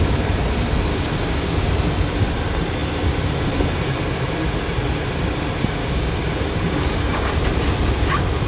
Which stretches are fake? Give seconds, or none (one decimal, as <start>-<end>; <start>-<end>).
0.9-1.7; 5.8-7.3